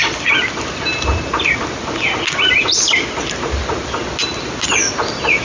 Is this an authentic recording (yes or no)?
yes